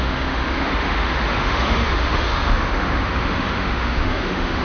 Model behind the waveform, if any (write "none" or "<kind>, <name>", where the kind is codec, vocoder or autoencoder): autoencoder, DAC-VAE